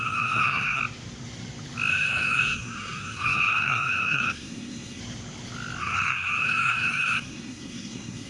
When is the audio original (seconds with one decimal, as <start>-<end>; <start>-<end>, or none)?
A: 0.8-1.9; 5.0-5.8